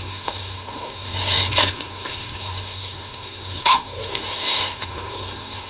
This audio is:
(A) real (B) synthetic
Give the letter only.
B